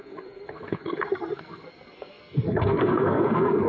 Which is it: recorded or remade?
remade